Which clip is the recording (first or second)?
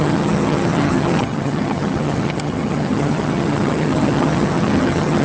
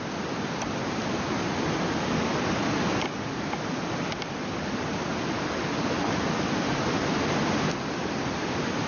second